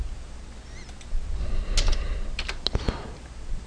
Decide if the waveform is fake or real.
real